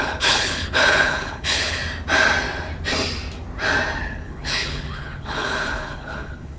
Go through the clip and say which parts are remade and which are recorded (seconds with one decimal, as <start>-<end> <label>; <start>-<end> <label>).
0.0-1.8 remade; 1.8-4.0 recorded; 4.0-6.6 remade